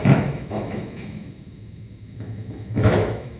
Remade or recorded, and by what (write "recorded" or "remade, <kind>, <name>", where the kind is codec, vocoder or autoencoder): remade, autoencoder, DAC-VAE